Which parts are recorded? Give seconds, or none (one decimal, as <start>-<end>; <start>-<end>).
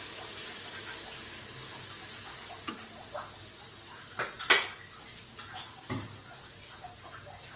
0.0-7.6